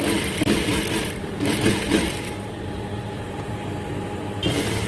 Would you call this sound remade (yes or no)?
yes